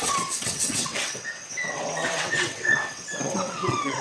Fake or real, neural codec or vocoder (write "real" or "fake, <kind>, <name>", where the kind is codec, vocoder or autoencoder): fake, vocoder, WaveNeXt